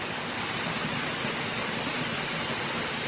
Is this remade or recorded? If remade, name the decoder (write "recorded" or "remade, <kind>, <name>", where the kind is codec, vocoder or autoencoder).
recorded